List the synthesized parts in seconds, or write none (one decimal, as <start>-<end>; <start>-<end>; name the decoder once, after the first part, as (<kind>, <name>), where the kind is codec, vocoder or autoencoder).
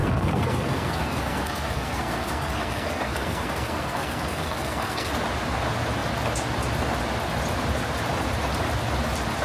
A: 0.0-5.1 (codec, SNAC)